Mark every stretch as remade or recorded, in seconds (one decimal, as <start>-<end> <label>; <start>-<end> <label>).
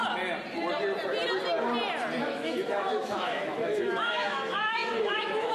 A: 0.0-2.2 recorded; 2.2-5.5 remade